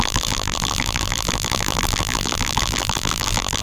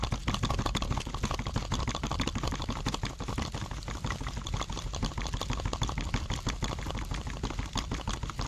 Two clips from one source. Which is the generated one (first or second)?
first